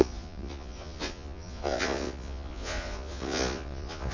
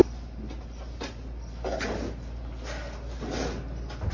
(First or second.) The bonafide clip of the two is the second